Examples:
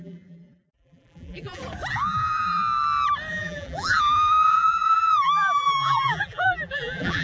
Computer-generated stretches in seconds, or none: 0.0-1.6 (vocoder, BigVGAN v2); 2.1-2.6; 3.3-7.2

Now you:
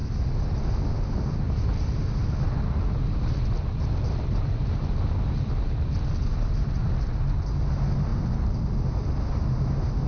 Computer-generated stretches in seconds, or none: none

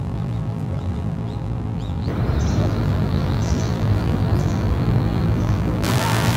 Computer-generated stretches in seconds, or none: 0.0-2.1 (vocoder, BigVGAN v2); 2.6-6.4

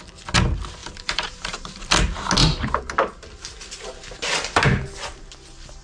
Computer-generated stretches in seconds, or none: 0.8-1.8 (vocoder, BigVGAN v2)

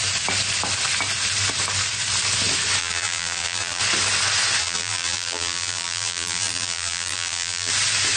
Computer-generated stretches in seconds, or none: 2.8-3.8 (vocoder, BigVGAN v2); 4.6-7.7

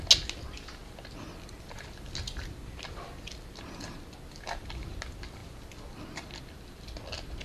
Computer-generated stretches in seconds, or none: none

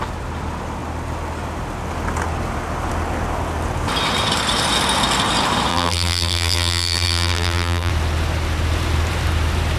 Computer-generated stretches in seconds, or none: 5.7-7.9 (vocoder, BigVGAN v2)

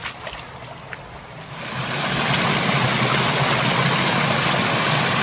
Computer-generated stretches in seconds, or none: none